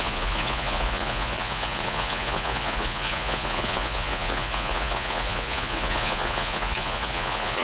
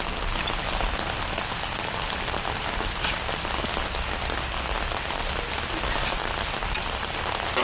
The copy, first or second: first